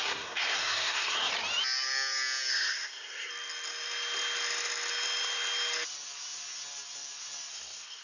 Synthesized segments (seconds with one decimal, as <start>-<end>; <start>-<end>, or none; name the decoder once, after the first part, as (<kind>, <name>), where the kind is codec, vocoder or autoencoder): 0.0-1.3 (codec, SNAC); 2.5-3.3; 7.5-8.0